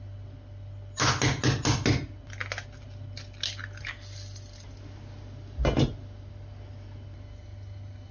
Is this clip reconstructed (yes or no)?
no